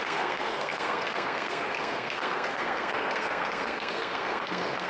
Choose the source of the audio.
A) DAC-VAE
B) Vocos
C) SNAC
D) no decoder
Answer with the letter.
C